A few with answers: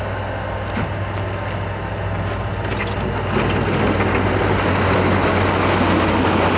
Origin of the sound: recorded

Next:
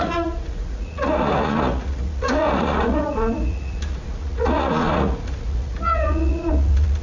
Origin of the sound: remade